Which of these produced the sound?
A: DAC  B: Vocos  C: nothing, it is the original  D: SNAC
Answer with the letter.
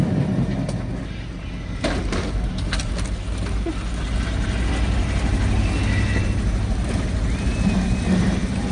C